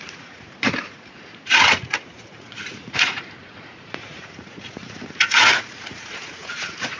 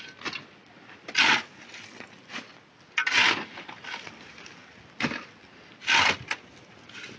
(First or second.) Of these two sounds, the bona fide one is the second